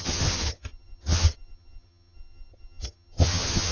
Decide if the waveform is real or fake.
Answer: fake